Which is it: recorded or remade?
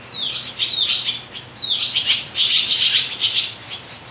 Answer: recorded